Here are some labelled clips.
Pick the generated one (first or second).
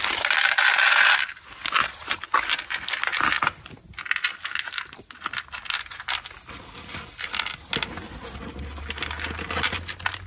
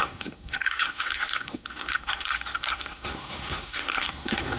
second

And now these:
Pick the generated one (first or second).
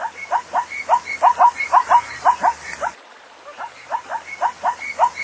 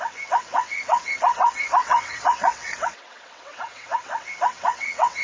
second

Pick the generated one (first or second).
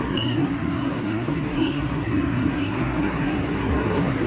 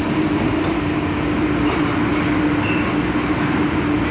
first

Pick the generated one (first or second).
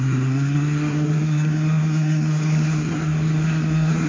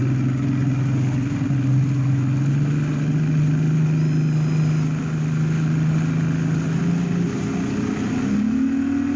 first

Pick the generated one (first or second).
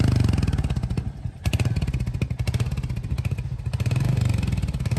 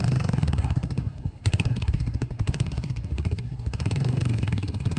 second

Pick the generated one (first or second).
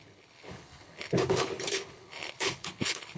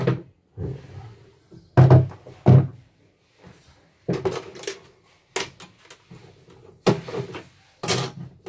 first